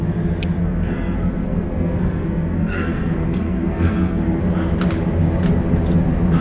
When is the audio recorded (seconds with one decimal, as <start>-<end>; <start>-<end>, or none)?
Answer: 0.0-0.6; 4.4-6.4